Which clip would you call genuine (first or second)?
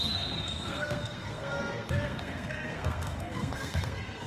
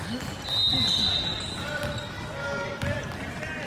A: second